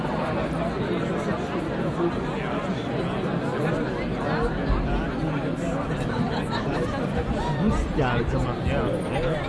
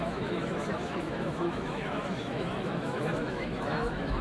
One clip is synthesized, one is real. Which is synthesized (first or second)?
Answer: second